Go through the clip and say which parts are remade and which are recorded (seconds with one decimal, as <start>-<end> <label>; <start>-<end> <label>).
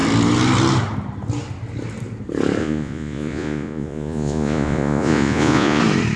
0.0-2.6 recorded; 2.6-5.8 remade; 5.8-6.2 recorded